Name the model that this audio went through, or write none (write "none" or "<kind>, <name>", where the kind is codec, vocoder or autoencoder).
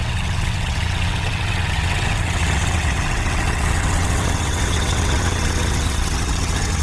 vocoder, WaveNeXt